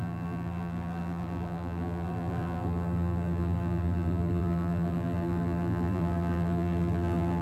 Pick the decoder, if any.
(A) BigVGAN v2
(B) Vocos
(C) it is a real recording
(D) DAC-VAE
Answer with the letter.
A